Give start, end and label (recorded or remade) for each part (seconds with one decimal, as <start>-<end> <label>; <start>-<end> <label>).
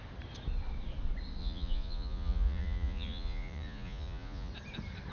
0.0-1.4 recorded; 1.4-4.5 remade; 4.5-5.1 recorded